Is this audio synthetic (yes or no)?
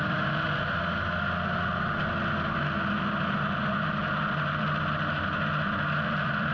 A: no